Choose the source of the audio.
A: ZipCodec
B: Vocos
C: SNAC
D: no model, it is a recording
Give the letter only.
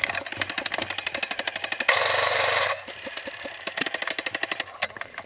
D